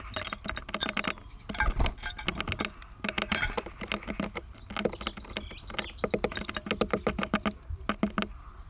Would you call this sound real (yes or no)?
yes